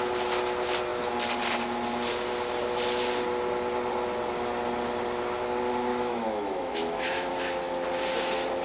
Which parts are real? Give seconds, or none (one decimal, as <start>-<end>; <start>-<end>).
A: 0.0-5.9; 7.3-8.6